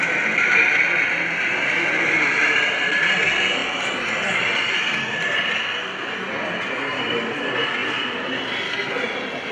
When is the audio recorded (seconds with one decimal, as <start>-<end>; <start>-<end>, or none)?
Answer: 0.0-9.5